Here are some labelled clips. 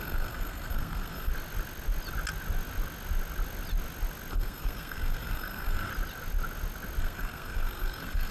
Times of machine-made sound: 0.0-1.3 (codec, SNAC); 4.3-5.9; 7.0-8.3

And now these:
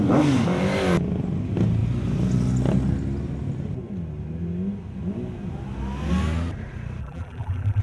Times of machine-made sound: 7.0-7.8 (vocoder, BigVGAN v2)

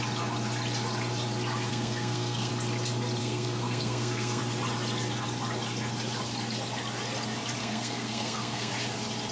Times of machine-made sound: 1.7-2.5 (codec, SNAC); 3.2-4.4; 7.6-8.7